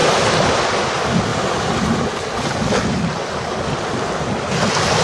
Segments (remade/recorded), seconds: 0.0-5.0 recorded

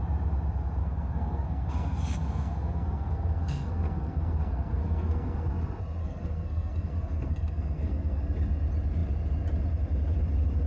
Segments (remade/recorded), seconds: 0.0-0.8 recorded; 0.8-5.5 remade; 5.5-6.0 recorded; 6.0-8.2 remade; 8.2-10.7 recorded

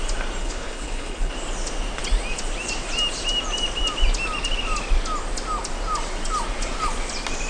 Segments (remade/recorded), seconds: 0.0-0.4 recorded; 0.4-1.3 remade; 1.3-7.5 recorded

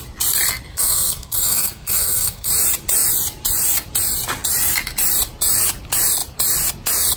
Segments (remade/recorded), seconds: 0.0-0.7 recorded; 0.7-2.5 remade; 2.5-7.2 recorded